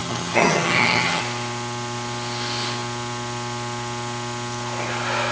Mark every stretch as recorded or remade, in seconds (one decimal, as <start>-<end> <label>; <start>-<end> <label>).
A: 0.0-1.2 remade; 1.2-5.3 recorded